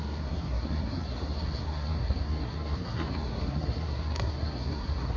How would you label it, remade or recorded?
remade